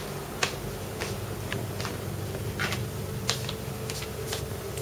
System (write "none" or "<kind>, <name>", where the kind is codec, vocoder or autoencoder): none